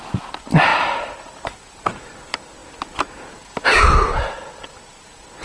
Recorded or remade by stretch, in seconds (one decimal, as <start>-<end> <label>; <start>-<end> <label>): 0.0-5.4 recorded